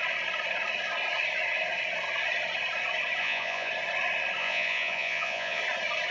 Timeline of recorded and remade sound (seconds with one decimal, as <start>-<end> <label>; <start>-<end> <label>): 0.0-3.2 recorded; 3.2-3.7 remade; 3.7-4.4 recorded; 4.4-5.6 remade; 5.6-6.1 recorded